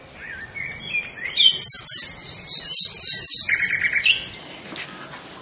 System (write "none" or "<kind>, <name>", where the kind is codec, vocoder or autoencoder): none